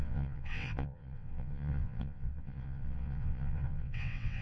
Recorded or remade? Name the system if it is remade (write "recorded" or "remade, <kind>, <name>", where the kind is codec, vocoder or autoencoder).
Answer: remade, vocoder, WaveNeXt